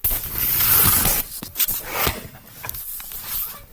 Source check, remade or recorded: recorded